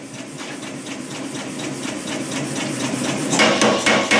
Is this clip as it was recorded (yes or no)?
yes